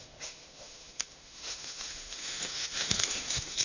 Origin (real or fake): fake